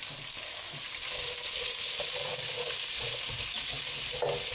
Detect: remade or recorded recorded